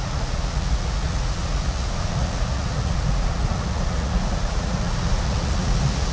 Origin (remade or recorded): remade